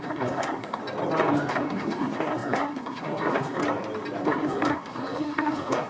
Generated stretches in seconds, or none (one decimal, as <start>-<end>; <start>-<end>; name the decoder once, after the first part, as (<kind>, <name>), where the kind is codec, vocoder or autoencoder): 0.0-0.8 (codec, SNAC); 1.5-3.6; 4.2-5.9